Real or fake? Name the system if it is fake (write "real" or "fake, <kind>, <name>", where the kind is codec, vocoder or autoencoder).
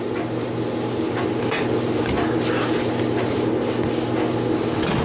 real